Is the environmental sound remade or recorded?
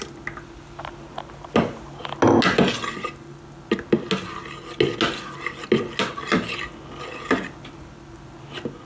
recorded